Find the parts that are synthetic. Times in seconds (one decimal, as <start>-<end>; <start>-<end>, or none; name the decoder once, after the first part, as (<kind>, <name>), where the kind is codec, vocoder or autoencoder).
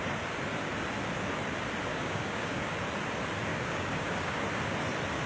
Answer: 1.9-2.7 (codec, DAC); 3.5-4.4